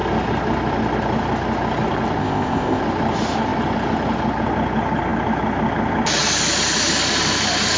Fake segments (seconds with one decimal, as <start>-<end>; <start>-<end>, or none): 2.2-2.8